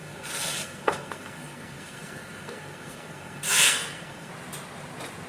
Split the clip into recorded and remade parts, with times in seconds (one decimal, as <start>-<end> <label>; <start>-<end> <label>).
0.0-4.3 remade; 4.3-5.3 recorded